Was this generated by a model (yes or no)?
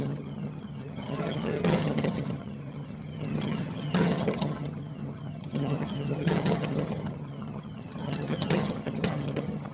yes